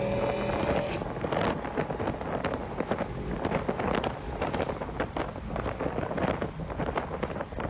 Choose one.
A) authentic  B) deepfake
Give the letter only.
A